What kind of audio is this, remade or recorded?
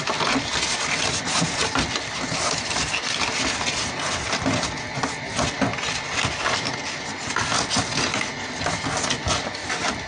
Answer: recorded